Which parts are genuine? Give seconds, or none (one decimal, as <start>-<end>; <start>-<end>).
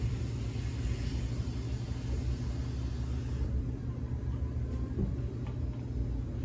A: 0.0-6.4